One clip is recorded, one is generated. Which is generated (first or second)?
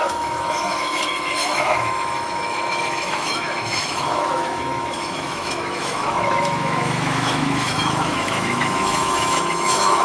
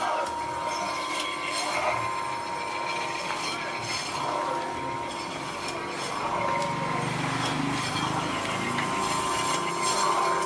first